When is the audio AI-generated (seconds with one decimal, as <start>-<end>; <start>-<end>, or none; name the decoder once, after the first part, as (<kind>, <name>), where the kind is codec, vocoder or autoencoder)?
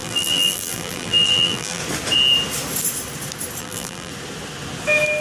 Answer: 0.0-1.8 (vocoder, BigVGAN v2); 3.6-4.1